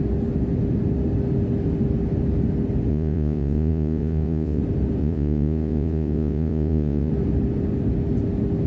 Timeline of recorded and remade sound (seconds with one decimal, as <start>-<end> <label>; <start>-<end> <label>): 0.0-2.9 recorded; 2.9-4.6 remade; 4.6-5.0 recorded; 5.0-7.1 remade; 7.1-8.7 recorded